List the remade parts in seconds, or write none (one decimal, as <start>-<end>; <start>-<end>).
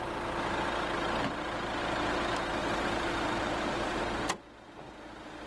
2.6-4.0